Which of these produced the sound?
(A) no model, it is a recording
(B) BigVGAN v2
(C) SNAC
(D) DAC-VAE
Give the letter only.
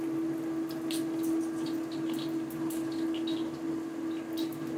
A